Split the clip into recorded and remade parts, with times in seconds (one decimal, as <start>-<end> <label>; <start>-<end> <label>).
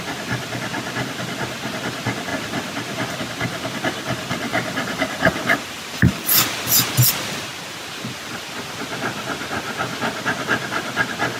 0.0-4.5 recorded; 4.5-6.4 remade; 6.4-11.4 recorded